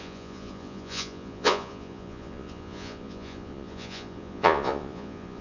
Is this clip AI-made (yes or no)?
yes